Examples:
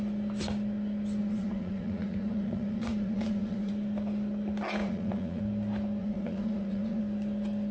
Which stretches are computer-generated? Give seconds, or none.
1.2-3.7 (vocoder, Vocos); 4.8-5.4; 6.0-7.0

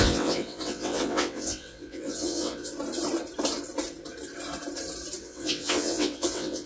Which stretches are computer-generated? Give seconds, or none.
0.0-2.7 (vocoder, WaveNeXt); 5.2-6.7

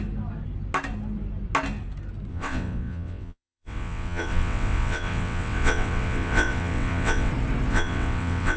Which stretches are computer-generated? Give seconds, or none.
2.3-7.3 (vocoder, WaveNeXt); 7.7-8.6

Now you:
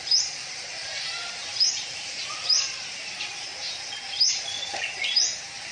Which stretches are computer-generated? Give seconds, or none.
0.0-3.5 (vocoder, BigVGAN v2); 4.1-5.7